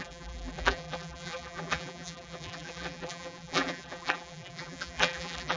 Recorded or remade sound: remade